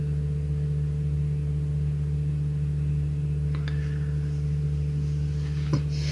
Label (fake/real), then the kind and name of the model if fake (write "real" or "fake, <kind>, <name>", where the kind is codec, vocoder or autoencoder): real